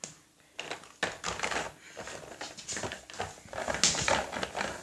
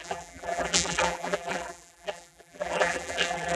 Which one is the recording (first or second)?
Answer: first